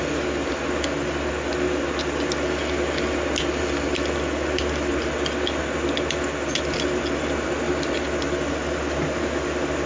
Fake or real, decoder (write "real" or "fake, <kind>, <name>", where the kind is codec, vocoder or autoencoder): real